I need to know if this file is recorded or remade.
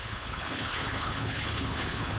remade